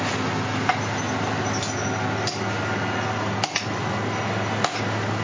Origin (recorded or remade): recorded